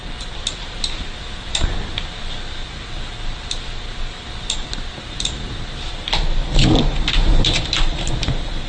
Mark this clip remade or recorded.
recorded